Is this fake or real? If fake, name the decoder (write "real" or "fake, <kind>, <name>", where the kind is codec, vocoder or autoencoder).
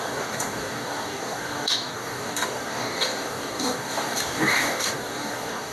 fake, codec, DAC